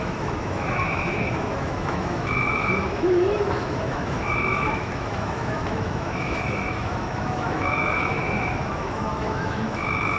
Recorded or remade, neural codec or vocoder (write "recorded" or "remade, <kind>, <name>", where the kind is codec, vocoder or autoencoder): remade, autoencoder, DAC-VAE